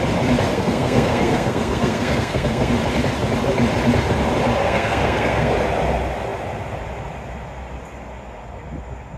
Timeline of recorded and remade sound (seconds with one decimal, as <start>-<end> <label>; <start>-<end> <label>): 0.0-0.5 recorded; 0.5-2.7 remade; 2.7-4.6 recorded; 4.6-5.5 remade; 5.5-9.2 recorded